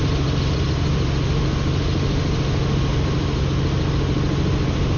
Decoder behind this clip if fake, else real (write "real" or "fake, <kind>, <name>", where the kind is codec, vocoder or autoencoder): real